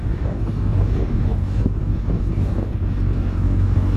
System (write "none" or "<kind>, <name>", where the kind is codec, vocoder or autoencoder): codec, DAC